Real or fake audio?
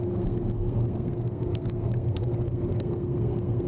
fake